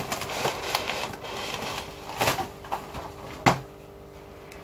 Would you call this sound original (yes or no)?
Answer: yes